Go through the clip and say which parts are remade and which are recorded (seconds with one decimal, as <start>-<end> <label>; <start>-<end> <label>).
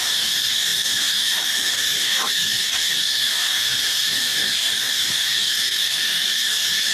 0.0-6.9 remade